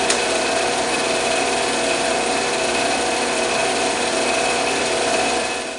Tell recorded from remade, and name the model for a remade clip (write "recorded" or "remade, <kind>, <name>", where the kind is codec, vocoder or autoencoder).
remade, vocoder, BigVGAN v2